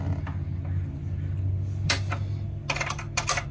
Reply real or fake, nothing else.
real